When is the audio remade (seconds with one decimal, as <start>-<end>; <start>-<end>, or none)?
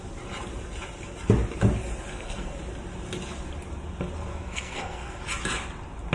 2.1-2.6; 4.3-5.2